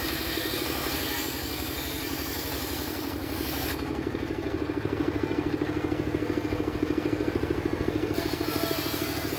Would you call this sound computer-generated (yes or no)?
yes